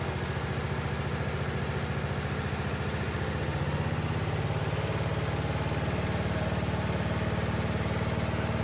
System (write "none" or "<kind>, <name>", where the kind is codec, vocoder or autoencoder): none